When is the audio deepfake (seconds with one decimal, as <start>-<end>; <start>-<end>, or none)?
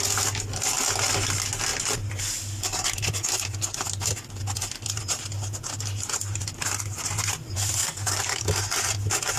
7.8-8.4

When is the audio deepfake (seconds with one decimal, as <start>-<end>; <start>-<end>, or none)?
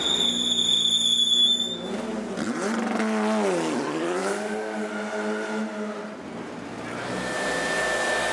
4.2-4.9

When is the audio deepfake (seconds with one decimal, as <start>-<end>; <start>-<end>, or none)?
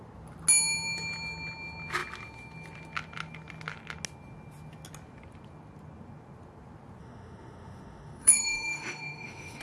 7.0-9.6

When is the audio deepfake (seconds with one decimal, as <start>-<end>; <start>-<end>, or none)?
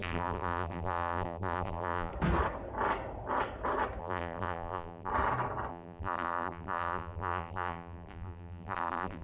0.0-2.1; 4.0-5.1; 5.7-9.2